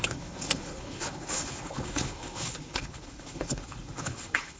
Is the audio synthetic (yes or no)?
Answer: yes